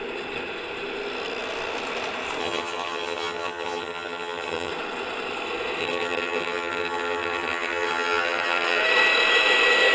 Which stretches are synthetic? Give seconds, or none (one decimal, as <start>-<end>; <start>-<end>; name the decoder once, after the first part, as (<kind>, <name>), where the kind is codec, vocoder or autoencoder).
2.4-4.7 (vocoder, HiFi-GAN); 5.8-8.8